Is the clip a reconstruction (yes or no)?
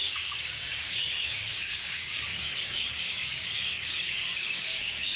yes